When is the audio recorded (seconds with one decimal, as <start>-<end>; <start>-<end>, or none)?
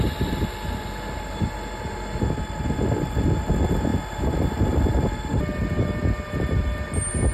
0.0-7.3